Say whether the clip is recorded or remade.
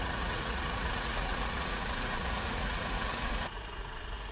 remade